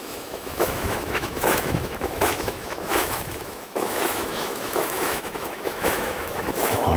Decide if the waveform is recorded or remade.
remade